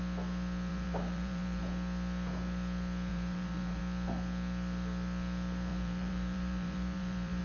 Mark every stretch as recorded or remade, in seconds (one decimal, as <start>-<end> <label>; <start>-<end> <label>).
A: 0.0-0.7 recorded; 0.7-1.6 remade; 1.6-3.1 recorded; 3.1-3.8 remade; 3.8-5.7 recorded; 5.7-7.4 remade